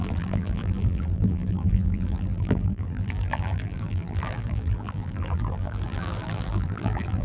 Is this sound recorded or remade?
remade